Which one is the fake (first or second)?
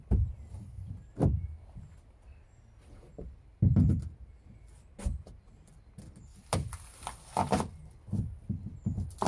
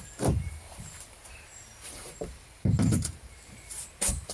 second